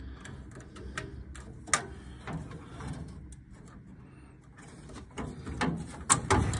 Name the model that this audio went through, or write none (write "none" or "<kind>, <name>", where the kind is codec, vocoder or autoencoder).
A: none